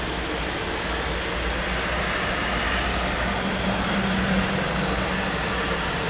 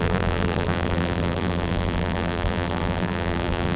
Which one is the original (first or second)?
first